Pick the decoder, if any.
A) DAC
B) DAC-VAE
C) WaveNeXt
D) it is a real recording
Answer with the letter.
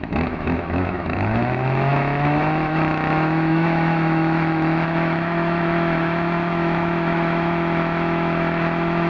B